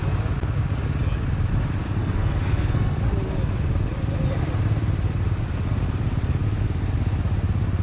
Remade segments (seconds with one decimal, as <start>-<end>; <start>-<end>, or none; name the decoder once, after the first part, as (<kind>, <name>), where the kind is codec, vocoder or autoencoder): 2.0-3.0 (codec, SNAC)